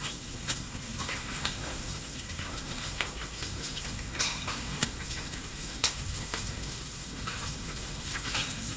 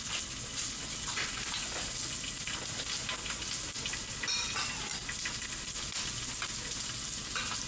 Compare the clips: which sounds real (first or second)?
second